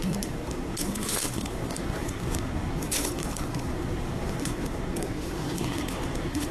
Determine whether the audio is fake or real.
fake